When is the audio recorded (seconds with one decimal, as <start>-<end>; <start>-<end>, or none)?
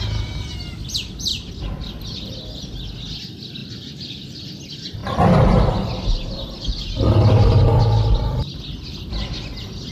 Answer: 0.0-1.3; 2.0-3.6; 4.4-9.9